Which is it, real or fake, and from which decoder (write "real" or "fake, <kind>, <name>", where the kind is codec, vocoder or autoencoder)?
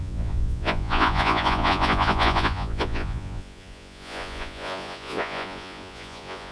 fake, vocoder, Vocos